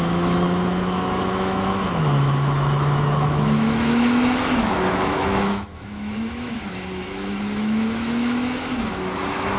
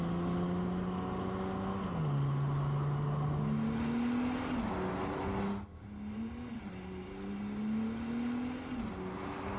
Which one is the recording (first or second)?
second